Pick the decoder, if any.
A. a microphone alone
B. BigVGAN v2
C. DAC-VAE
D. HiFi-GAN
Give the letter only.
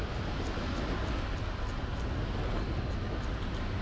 A